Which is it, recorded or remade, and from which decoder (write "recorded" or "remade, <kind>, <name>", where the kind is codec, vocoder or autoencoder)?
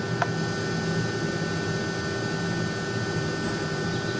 recorded